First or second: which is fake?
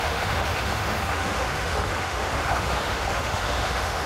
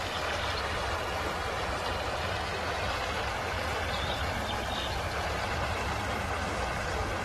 first